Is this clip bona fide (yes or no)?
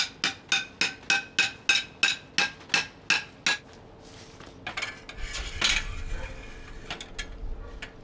yes